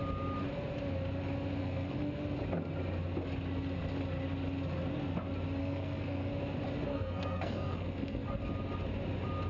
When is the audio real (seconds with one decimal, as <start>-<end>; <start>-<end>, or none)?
0.0-1.6; 2.2-5.6; 6.3-6.9; 8.4-9.5